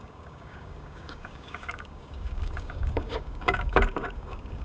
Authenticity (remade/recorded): remade